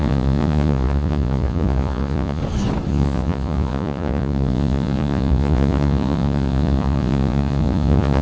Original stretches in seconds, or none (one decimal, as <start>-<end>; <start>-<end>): 2.4-2.9